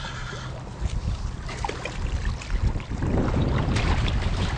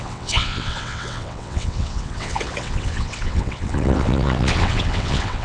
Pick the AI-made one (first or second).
second